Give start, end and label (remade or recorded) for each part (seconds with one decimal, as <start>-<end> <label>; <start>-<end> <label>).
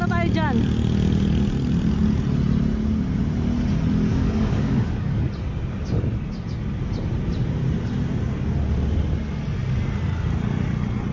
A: 0.0-4.1 recorded; 4.1-5.3 remade; 5.3-11.1 recorded